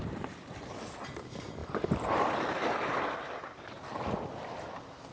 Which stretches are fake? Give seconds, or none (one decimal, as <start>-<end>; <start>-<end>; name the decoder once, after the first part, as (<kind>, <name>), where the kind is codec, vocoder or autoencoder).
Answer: none